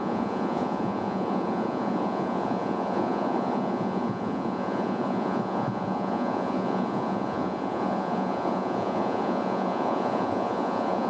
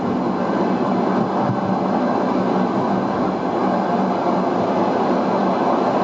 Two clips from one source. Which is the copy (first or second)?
first